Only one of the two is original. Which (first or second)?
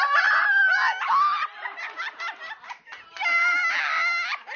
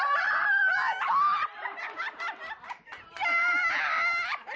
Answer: first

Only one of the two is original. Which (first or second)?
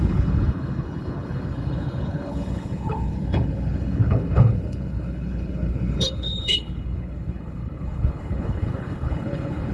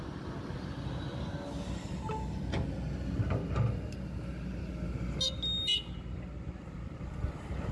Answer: second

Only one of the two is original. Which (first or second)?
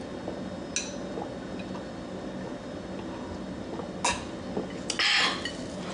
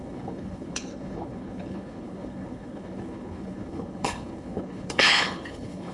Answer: first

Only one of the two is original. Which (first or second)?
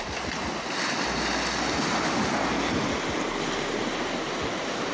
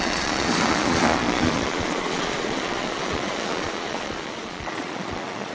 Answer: first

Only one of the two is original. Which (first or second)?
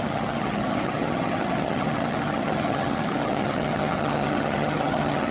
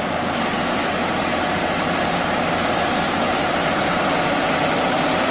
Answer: second